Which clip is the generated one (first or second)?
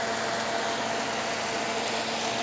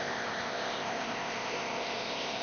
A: second